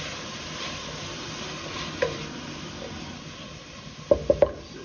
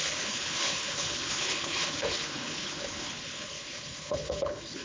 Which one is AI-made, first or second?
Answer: second